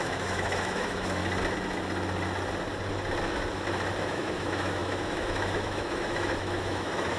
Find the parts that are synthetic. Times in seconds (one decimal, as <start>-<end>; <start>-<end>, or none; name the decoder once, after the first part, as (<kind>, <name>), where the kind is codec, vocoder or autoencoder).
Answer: 0.0-1.2 (autoencoder, DAC-VAE); 4.0-7.2